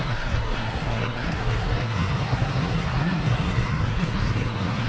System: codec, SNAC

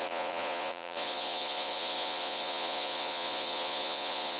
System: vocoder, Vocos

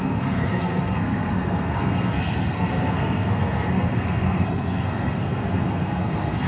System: codec, SNAC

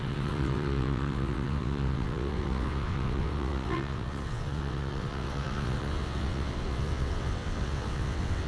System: vocoder, WaveNeXt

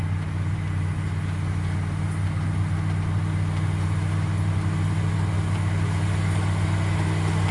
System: none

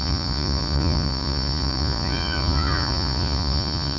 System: vocoder, Vocos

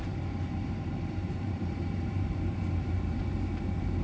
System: vocoder, BigVGAN v2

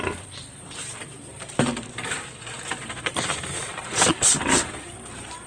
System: vocoder, BigVGAN v2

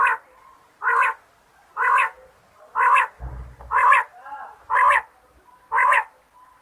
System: none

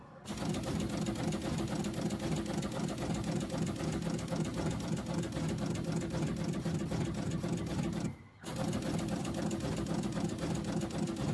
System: none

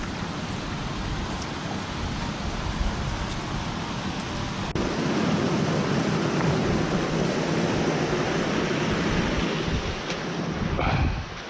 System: none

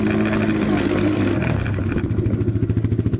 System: none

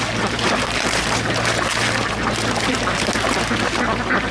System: none